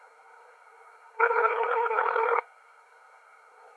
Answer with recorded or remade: remade